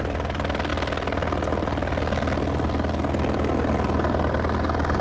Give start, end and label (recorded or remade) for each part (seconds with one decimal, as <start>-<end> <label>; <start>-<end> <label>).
0.0-5.0 recorded